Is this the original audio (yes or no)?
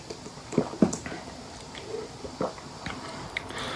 yes